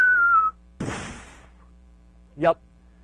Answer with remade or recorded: remade